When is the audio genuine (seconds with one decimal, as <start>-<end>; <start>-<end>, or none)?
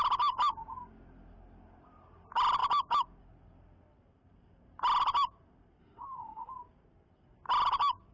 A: 0.0-5.8; 6.5-8.1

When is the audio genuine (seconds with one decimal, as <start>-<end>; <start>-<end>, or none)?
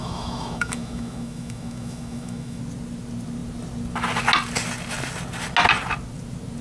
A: 2.6-6.6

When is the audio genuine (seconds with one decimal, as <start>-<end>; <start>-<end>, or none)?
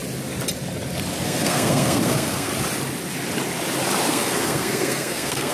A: 0.0-1.2; 2.5-4.1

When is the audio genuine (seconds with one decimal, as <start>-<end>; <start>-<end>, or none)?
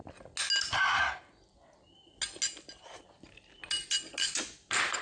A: 0.0-5.0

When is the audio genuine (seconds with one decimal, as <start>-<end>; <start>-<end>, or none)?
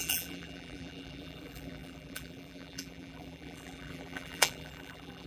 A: none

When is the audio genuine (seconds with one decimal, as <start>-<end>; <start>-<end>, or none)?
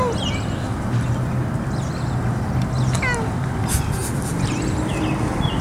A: 0.0-5.6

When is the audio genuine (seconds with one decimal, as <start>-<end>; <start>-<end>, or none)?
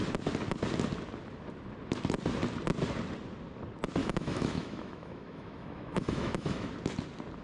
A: 0.0-4.0; 6.7-7.4